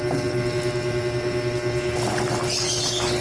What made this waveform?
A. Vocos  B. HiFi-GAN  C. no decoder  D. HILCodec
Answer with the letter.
C